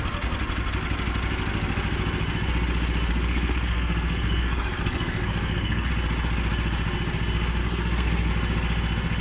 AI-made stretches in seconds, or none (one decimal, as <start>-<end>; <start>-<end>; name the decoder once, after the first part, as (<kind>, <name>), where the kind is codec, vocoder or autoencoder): 3.1-5.9 (codec, SNAC); 7.6-8.3